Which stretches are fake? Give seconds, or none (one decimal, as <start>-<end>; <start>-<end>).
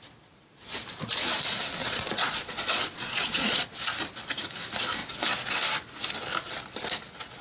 1.8-3.6